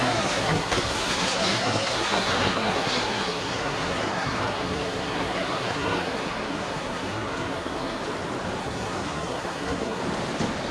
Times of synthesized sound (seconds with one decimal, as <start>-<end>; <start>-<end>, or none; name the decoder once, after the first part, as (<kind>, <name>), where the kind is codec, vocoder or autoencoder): 0.0-8.0 (codec, SNAC); 8.6-10.0